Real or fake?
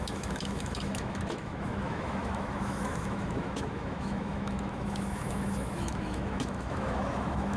fake